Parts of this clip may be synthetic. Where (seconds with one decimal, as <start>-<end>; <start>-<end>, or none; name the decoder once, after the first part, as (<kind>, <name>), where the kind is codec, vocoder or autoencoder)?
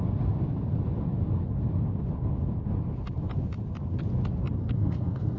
4.6-5.4 (codec, SNAC)